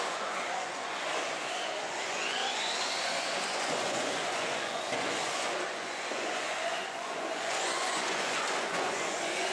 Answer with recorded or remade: remade